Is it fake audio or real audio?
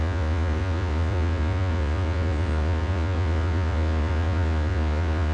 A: fake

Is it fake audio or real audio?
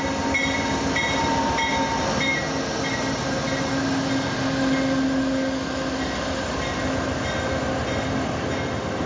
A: real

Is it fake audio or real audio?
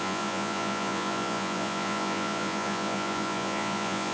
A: fake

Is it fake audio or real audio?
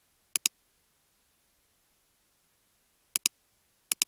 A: real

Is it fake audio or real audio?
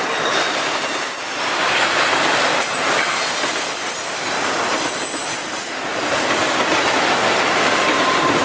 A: real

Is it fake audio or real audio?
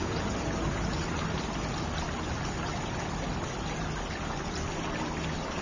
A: real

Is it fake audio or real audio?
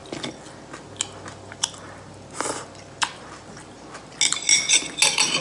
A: real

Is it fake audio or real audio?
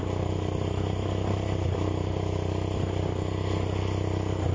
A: real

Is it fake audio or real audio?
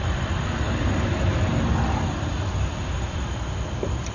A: real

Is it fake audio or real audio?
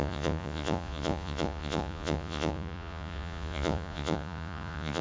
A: fake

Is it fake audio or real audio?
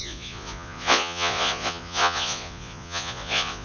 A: fake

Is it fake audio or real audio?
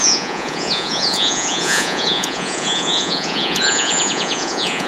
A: fake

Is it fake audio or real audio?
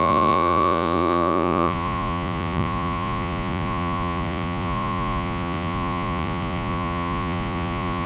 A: fake